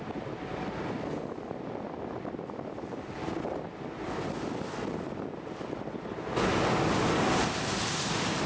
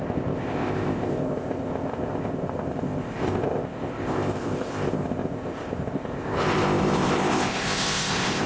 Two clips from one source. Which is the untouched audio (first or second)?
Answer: first